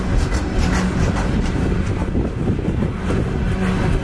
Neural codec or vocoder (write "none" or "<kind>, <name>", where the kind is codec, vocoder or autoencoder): none